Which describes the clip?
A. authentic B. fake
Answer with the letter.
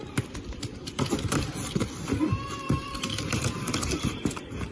A